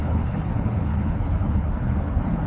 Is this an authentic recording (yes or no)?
no